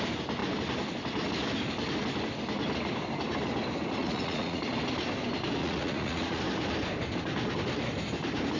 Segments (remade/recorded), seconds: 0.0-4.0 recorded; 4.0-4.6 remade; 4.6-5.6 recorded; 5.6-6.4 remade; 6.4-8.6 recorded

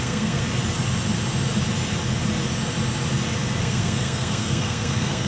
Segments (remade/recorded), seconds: 0.0-0.4 remade; 0.4-3.6 recorded; 3.6-5.3 remade

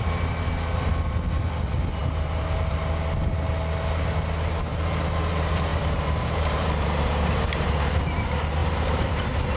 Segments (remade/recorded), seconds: 0.0-5.7 recorded; 5.7-8.0 remade; 8.0-8.6 recorded; 8.6-9.2 remade; 9.2-9.6 recorded

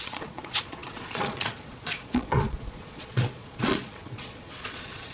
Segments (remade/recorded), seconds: 0.0-5.1 remade

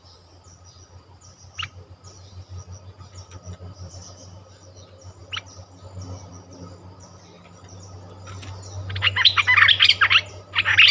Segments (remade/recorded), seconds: 0.0-10.9 recorded

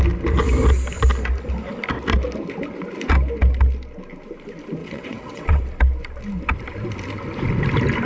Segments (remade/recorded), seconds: 0.0-4.8 recorded; 4.8-5.6 remade; 5.6-8.1 recorded

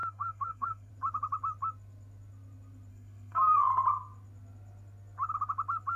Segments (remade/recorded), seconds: 0.0-0.9 remade; 0.9-2.9 recorded; 2.9-3.7 remade; 3.7-6.0 recorded

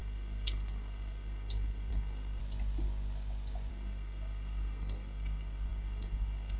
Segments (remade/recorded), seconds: 0.0-2.4 remade; 2.4-3.7 recorded; 3.7-6.6 remade